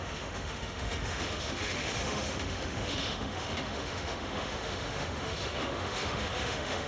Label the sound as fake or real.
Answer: fake